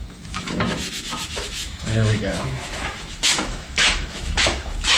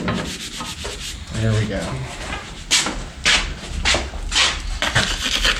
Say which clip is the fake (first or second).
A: first